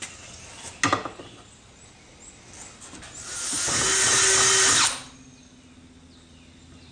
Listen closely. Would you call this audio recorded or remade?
recorded